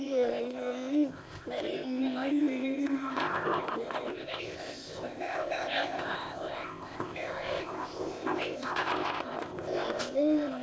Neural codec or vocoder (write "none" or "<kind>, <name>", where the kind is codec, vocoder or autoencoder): codec, ZipCodec